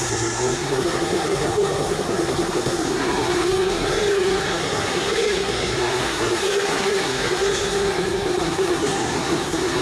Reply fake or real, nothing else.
fake